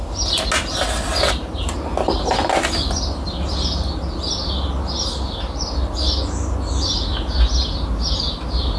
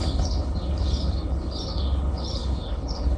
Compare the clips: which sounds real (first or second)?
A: first